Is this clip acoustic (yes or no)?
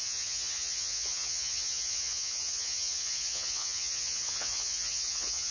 no